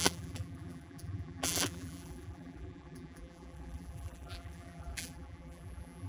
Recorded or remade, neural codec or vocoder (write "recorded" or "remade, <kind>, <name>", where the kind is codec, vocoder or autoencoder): remade, vocoder, BigVGAN v2